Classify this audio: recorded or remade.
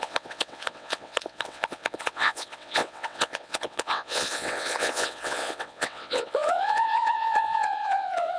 remade